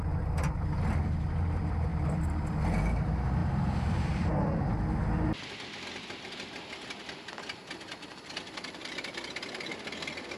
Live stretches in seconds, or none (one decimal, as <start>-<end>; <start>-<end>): 0.0-1.9; 2.4-3.4; 4.3-10.4